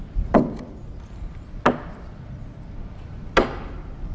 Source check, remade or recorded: recorded